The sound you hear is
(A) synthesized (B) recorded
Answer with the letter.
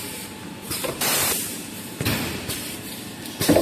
A